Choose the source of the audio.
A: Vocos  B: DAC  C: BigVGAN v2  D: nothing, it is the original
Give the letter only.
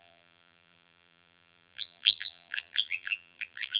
C